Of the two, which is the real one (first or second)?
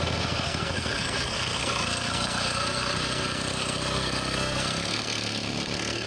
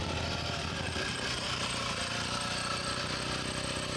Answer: second